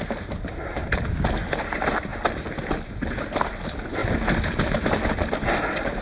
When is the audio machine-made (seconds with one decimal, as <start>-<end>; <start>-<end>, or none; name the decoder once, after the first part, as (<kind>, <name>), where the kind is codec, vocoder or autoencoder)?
none